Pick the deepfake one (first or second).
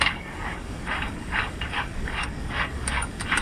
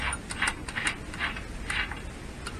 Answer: first